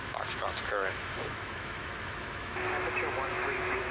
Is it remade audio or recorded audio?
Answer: remade